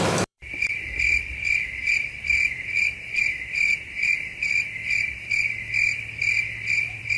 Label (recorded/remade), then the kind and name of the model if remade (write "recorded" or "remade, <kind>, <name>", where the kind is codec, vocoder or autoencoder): remade, vocoder, BigVGAN v2